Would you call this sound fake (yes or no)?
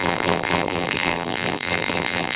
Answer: yes